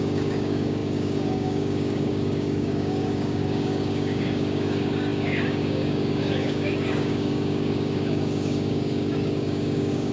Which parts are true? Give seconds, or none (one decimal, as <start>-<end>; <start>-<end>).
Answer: none